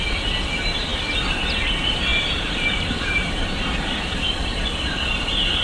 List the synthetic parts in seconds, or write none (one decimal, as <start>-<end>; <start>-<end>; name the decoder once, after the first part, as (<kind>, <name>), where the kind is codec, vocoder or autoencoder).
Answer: 2.1-3.6 (vocoder, BigVGAN v2)